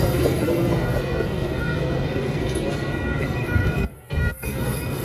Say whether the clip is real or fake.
fake